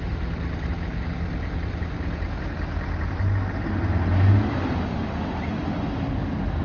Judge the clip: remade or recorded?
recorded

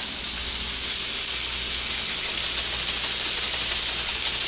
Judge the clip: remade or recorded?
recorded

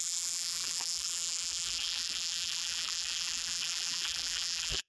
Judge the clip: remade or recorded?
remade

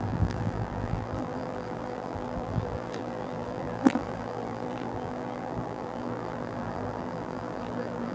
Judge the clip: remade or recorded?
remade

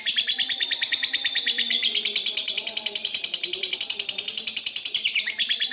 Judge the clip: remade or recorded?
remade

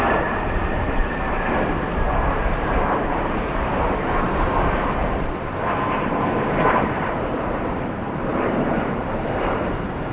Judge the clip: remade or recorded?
remade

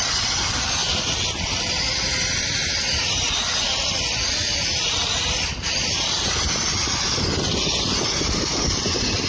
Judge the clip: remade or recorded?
recorded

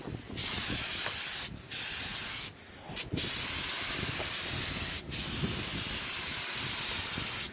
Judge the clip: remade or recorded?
recorded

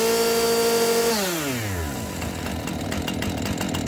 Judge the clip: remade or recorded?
recorded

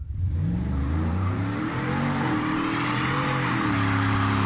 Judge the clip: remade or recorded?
remade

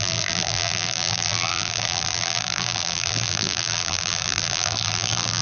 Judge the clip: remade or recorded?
remade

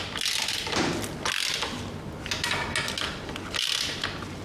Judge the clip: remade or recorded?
recorded